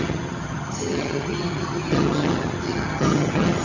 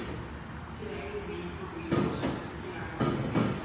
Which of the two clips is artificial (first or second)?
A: first